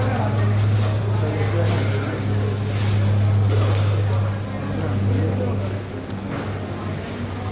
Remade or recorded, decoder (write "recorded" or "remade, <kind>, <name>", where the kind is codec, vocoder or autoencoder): recorded